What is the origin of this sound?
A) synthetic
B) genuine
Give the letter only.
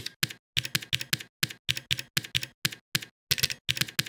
B